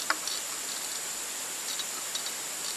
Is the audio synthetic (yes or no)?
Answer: no